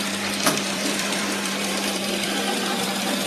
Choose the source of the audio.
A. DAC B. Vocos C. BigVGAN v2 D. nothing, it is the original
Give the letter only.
C